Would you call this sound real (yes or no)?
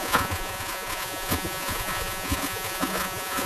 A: no